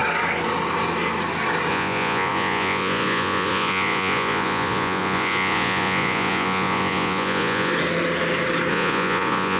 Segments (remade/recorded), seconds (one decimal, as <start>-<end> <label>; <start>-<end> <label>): 0.0-1.7 recorded; 1.7-7.7 remade; 7.7-8.7 recorded; 8.7-9.6 remade